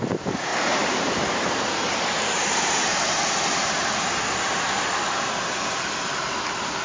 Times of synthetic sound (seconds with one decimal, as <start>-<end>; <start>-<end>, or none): 0.5-4.6